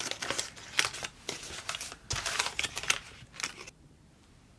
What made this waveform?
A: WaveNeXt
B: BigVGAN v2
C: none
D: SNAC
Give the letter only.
C